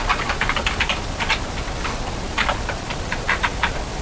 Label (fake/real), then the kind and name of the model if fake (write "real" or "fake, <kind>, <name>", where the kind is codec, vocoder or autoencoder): real